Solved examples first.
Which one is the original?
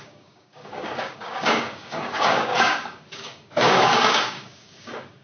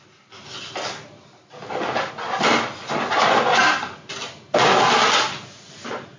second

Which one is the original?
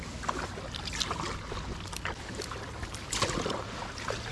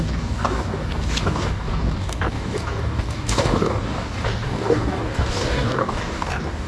first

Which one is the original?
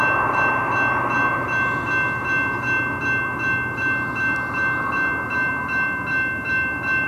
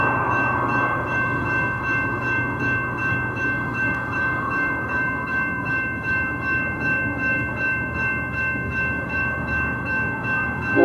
first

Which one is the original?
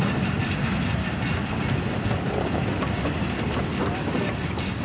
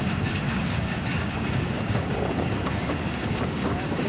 first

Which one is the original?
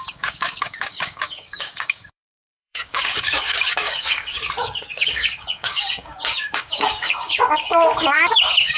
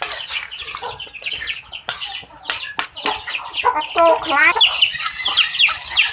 second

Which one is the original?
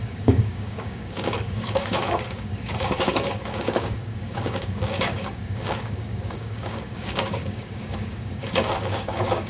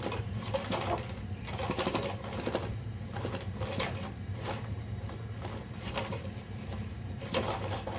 second